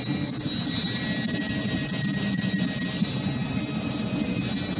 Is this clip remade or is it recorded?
recorded